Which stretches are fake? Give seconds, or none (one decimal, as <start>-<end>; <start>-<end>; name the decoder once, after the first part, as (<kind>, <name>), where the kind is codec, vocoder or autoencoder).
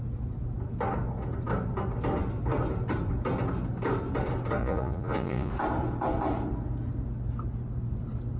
4.6-5.5 (vocoder, Vocos)